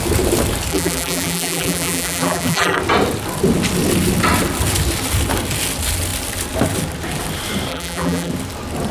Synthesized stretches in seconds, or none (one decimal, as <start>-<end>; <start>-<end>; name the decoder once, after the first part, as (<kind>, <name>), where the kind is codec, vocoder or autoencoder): 0.7-2.8 (vocoder, BigVGAN v2); 7.7-8.3